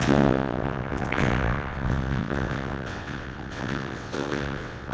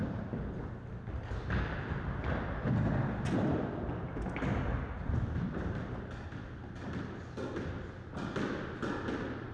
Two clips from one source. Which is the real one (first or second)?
second